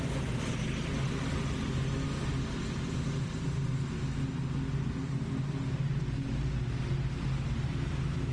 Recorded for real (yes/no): yes